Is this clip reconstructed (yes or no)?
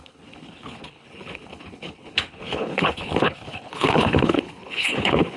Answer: yes